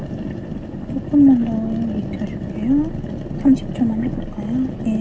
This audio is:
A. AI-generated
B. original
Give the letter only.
B